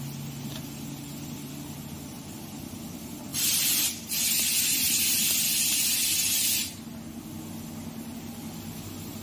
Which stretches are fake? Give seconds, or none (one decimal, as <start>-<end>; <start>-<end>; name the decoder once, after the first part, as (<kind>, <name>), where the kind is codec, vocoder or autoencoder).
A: none